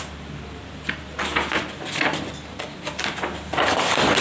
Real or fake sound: real